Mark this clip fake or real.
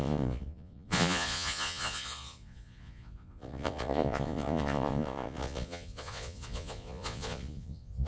fake